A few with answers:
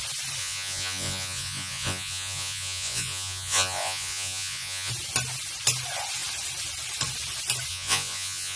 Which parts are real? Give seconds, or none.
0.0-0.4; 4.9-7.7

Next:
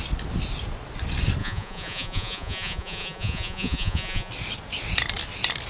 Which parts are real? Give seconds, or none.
0.0-1.4; 4.3-5.7

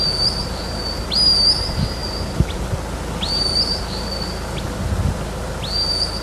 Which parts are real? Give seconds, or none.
0.0-6.2